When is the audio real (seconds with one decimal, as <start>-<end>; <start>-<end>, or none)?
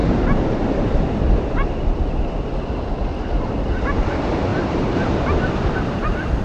1.8-4.5; 5.5-6.4